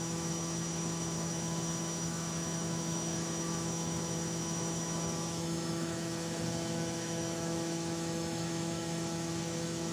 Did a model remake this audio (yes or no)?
yes